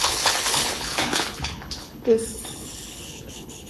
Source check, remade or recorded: remade